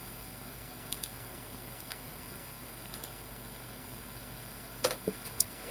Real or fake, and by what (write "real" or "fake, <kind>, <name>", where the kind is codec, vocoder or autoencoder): fake, codec, SNAC